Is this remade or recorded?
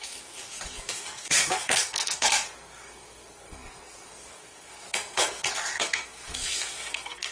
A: remade